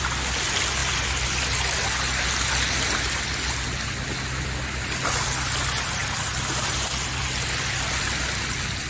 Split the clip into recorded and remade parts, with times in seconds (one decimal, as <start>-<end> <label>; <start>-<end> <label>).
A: 0.0-8.9 recorded